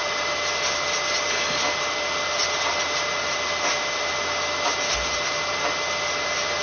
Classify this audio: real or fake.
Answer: real